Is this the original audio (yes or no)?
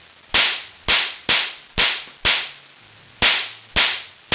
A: yes